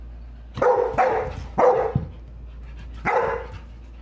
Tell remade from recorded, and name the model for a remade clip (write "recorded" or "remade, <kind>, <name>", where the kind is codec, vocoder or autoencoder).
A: recorded